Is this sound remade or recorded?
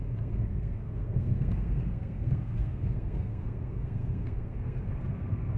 remade